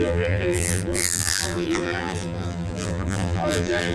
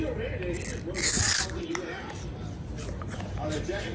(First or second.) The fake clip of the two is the first